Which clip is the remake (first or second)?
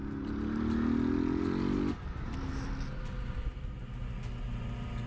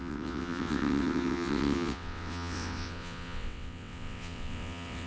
second